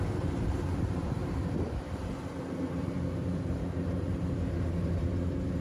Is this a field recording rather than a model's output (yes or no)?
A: no